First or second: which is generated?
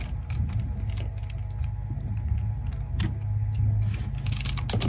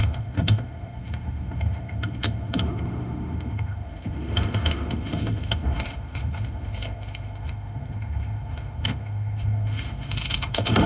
second